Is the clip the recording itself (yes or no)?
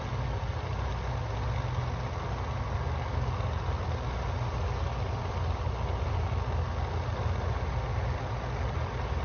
yes